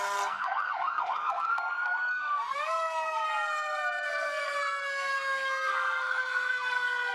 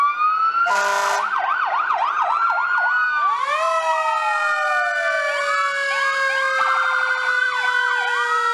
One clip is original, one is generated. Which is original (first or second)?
second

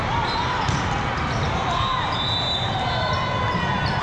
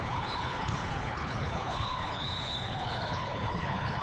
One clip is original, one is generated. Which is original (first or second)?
first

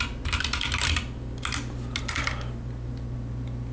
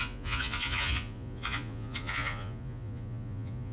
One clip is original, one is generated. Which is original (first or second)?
first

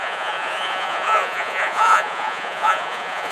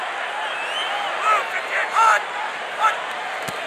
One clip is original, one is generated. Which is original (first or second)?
second